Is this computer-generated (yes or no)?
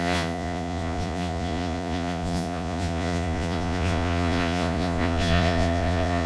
yes